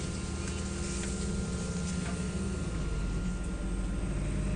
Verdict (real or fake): real